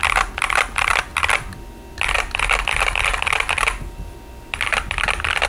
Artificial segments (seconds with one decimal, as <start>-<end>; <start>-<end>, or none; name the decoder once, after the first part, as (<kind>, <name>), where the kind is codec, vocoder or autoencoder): none